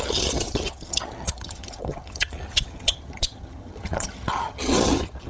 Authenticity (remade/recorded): remade